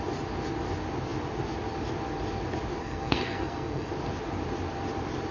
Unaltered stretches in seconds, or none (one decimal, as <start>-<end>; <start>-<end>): 0.0-2.8; 3.9-5.3